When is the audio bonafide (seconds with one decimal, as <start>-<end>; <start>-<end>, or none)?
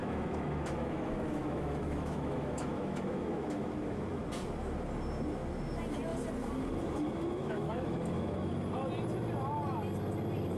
4.2-7.4; 8.5-10.6